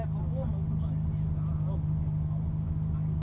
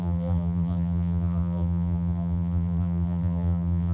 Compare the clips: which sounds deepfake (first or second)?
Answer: second